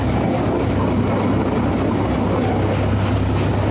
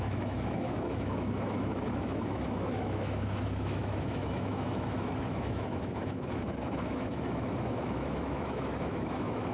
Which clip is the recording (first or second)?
first